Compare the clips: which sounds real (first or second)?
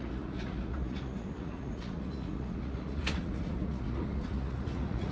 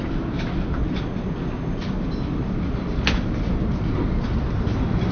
second